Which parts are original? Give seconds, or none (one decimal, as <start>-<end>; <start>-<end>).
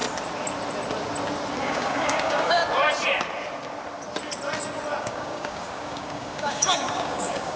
0.0-1.6; 2.6-5.0